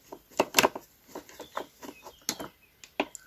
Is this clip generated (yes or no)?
no